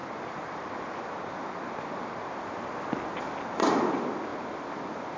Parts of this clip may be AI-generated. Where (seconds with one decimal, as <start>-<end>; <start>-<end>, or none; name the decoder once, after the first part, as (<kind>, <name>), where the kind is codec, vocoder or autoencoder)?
none